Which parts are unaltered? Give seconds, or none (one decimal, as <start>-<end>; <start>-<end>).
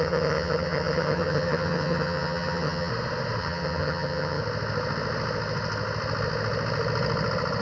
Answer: 2.9-3.4; 4.4-7.6